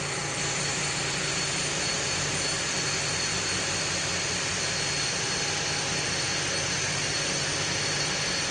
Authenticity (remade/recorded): recorded